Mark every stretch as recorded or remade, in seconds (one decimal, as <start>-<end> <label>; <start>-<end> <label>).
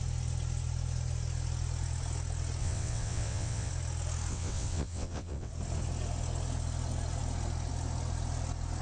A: 0.0-2.6 recorded; 2.6-3.7 remade; 3.7-4.3 recorded; 4.3-5.5 remade; 5.5-8.8 recorded